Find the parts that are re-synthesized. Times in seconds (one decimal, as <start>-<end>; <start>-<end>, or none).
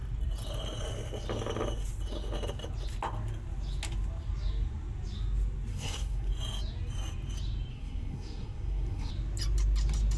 5.7-6.3; 7.7-9.1